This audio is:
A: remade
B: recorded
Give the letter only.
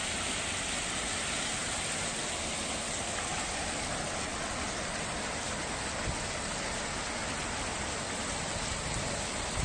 B